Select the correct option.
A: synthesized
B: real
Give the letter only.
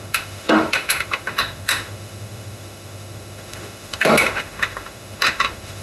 A